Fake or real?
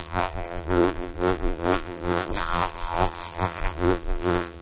fake